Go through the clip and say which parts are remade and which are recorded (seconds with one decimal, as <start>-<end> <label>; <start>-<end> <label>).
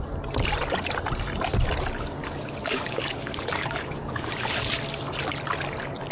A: 0.0-2.2 recorded; 2.2-4.3 remade; 4.3-6.1 recorded